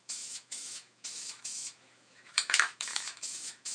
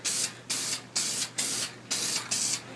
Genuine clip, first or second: second